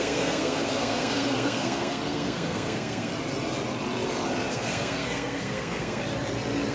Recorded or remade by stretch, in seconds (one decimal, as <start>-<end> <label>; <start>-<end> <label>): 0.0-3.1 remade; 3.1-4.5 recorded; 4.5-6.0 remade; 6.0-6.7 recorded